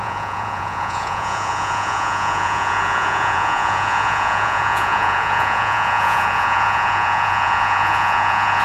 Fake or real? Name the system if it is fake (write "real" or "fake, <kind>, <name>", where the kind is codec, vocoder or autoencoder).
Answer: fake, vocoder, Vocos